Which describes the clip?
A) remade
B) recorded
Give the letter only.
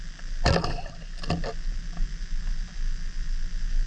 B